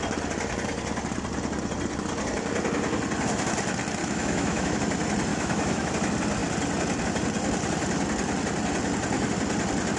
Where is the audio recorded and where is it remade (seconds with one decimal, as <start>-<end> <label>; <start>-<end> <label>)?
0.0-4.0 recorded; 4.0-4.8 remade; 4.8-5.3 recorded; 5.3-5.9 remade; 5.9-10.0 recorded